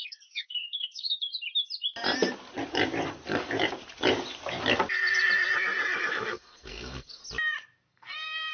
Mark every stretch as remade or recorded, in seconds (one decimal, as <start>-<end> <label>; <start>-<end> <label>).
0.0-1.3 remade; 1.3-6.1 recorded; 6.1-7.2 remade; 7.2-7.9 recorded; 7.9-8.5 remade